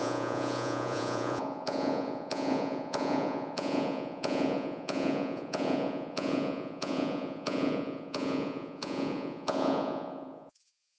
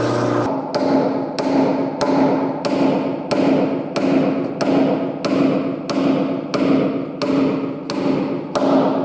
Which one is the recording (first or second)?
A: second